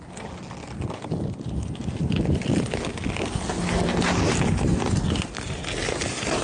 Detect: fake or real real